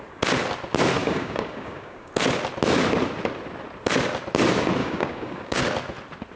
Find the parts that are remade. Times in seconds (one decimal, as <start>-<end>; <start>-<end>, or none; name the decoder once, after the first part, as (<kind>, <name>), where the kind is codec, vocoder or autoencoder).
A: 1.0-2.1 (codec, DAC); 4.8-5.6